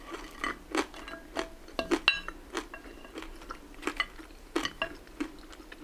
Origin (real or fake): real